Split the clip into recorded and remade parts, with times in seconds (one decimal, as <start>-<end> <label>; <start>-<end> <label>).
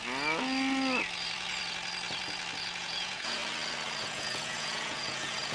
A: 0.0-2.8 recorded; 2.8-3.4 remade; 3.4-4.0 recorded; 4.0-5.5 remade